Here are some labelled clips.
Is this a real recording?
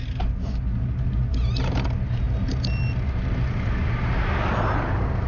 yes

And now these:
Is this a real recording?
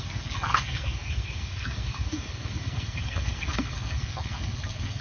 no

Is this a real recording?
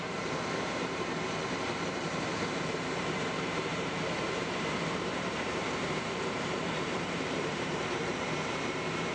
no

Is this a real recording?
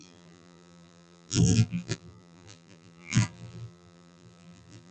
no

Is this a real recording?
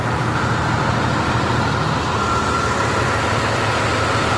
yes